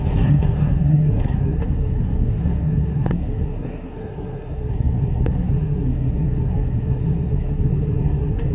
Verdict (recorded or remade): remade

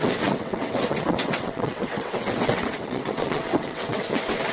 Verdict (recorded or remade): remade